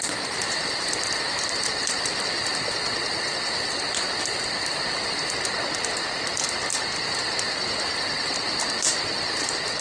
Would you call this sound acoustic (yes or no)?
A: yes